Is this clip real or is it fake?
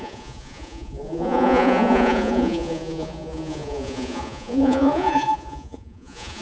fake